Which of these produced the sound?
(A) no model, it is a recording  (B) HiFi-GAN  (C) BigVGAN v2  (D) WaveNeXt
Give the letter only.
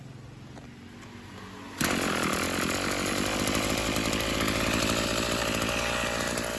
A